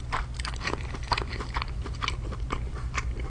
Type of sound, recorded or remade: remade